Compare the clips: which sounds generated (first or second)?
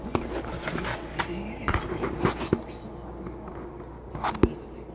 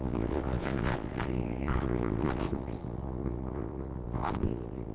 second